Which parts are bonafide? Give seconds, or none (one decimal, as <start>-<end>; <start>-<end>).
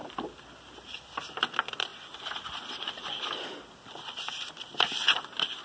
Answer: 0.0-5.6